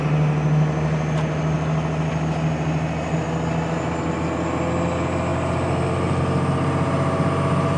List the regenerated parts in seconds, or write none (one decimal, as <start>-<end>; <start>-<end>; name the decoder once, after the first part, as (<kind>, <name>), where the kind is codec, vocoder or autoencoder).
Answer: none